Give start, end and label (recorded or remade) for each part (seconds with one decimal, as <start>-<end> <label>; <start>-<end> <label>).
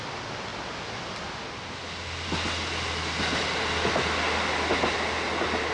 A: 0.0-5.7 recorded